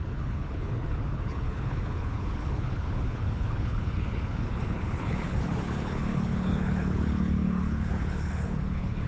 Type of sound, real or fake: fake